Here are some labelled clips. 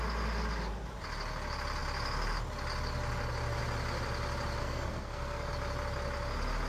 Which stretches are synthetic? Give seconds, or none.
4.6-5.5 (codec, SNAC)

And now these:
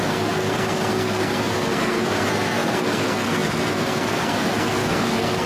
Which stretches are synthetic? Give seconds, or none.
0.0-5.5 (codec, SNAC)

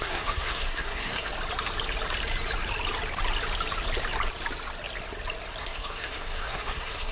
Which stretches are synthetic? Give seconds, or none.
0.0-1.3 (codec, SNAC); 5.6-7.1

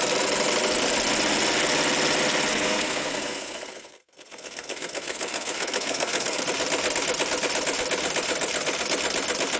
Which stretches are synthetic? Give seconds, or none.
2.5-6.4 (codec, SNAC)

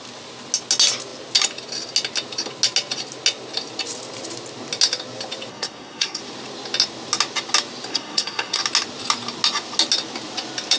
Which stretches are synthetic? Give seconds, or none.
5.5-6.2 (codec, SNAC); 7.9-8.6

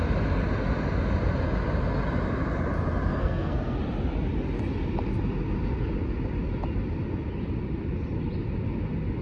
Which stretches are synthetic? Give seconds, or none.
3.1-3.8 (codec, SNAC)